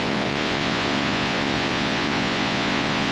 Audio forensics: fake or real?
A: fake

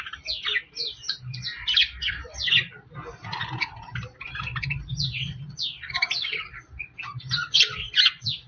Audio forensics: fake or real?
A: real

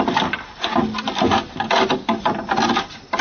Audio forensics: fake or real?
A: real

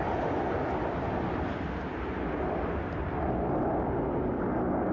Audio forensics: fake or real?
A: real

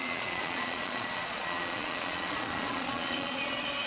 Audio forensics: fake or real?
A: fake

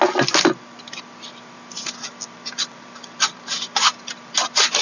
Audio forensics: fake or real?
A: real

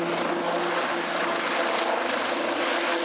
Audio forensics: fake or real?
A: real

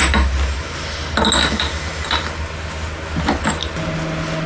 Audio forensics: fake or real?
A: real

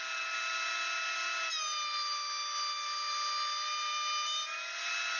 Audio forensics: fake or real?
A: real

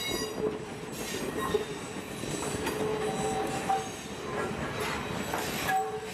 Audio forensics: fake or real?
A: real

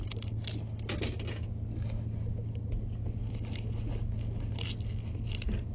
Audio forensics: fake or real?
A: real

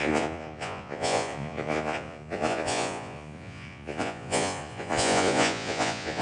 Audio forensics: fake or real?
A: fake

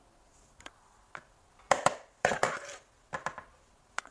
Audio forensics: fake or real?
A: real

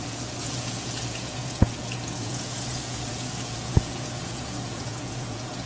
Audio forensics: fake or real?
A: fake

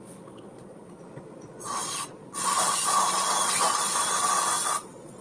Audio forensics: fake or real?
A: fake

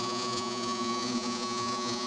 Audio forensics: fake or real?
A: fake